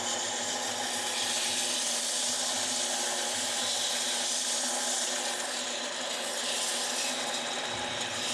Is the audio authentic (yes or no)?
yes